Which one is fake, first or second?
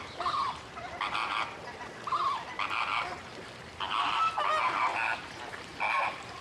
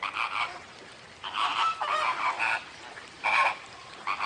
second